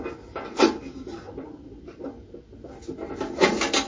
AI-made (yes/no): no